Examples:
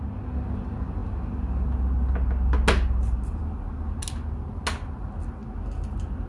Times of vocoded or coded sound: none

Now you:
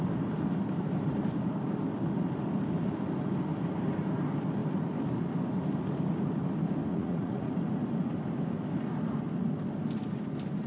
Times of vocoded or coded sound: 6.9-7.5 (vocoder, Vocos)

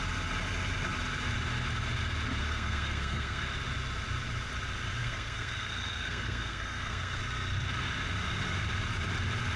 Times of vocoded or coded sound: 2.4-3.4 (codec, SNAC); 5.0-7.2

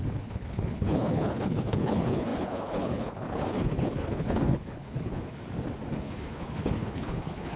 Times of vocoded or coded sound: 0.0-5.4 (codec, HILCodec); 5.9-7.6

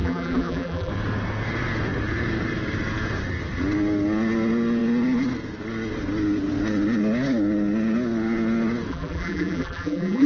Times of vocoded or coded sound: 0.0-0.9 (vocoder, BigVGAN v2); 8.9-10.3

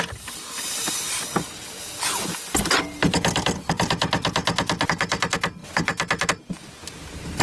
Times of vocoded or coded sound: none